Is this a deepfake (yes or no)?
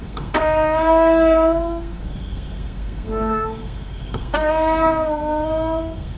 yes